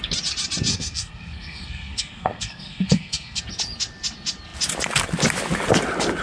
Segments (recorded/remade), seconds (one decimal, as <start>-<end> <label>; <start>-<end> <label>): 0.0-0.7 recorded; 0.7-3.4 remade; 3.4-6.2 recorded